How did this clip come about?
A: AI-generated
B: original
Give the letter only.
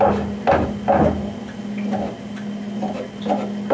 B